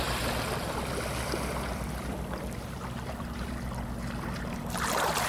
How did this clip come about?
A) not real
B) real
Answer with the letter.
B